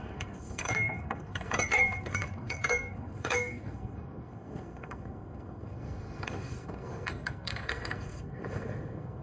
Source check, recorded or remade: remade